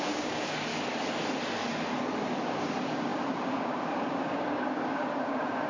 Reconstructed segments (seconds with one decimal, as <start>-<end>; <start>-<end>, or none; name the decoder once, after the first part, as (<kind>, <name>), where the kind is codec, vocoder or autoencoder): 0.0-0.7 (codec, DAC); 2.4-5.7